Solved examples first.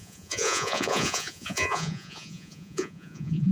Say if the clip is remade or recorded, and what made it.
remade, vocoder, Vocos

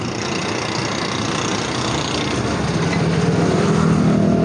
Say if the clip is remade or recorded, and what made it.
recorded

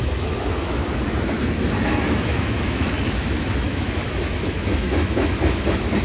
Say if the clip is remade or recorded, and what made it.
remade, autoencoder, DAC-VAE